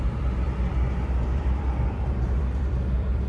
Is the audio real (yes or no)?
no